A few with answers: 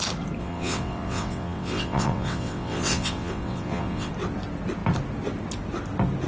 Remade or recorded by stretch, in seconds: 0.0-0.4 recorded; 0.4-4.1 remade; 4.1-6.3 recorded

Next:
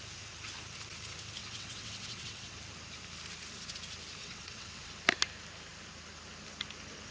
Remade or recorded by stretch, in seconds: 0.0-1.4 recorded; 1.4-2.6 remade; 2.6-4.2 recorded; 4.2-4.9 remade; 4.9-7.1 recorded

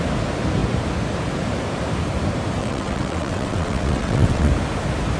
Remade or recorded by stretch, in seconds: 0.0-2.6 recorded; 2.6-4.5 remade; 4.5-5.2 recorded

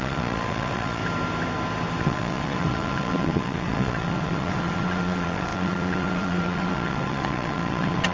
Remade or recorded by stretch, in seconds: 0.0-1.0 remade; 1.0-2.0 recorded; 2.0-8.1 remade